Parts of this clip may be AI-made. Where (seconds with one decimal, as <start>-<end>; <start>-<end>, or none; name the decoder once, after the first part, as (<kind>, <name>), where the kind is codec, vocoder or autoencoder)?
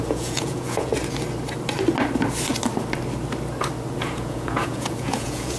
0.0-0.9 (vocoder, Vocos); 4.0-5.6